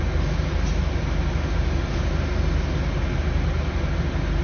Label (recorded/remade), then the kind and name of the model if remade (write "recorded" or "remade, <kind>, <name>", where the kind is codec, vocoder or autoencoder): recorded